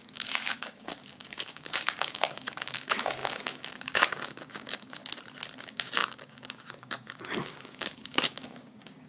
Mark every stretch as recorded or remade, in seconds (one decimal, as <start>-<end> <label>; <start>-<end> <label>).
0.0-5.0 remade; 5.0-5.6 recorded; 5.6-9.1 remade